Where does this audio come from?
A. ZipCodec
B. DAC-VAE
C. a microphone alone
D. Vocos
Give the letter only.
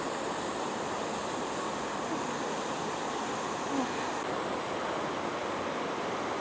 C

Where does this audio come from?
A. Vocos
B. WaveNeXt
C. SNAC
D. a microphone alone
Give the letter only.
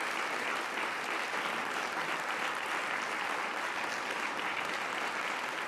D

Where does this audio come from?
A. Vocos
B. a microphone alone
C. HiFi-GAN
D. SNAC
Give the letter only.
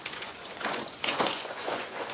A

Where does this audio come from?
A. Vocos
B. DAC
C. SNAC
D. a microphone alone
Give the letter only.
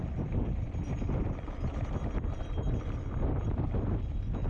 D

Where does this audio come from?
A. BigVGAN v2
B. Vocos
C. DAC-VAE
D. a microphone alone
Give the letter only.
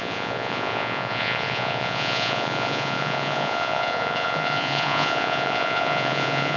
B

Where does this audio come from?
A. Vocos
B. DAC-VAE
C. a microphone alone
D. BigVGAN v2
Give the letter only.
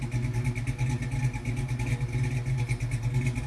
C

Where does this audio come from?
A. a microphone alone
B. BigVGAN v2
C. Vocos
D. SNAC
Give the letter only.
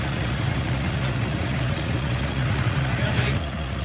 C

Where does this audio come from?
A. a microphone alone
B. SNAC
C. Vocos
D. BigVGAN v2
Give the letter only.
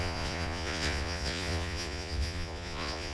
C